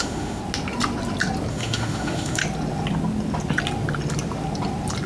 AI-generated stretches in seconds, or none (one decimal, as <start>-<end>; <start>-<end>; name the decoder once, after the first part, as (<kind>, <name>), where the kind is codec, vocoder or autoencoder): 0.0-0.4 (autoencoder, DAC-VAE); 1.5-2.4

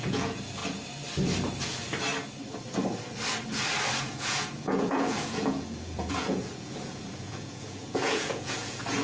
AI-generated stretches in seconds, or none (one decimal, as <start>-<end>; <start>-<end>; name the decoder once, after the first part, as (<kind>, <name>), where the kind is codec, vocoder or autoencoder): 0.0-0.6 (vocoder, Vocos); 4.0-9.0

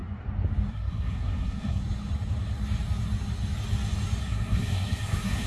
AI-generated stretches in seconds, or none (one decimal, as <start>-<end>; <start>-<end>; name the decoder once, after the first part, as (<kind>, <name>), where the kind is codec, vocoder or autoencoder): 0.7-1.8 (codec, SNAC); 4.2-5.5

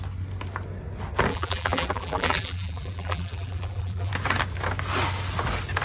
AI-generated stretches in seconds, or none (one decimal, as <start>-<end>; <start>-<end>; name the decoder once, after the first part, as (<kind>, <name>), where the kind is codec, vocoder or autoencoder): 1.3-4.1 (vocoder, BigVGAN v2)